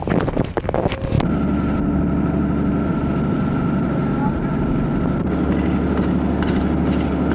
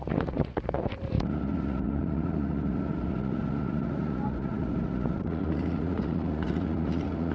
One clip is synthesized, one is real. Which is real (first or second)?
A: first